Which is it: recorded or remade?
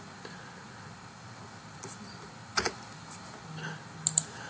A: recorded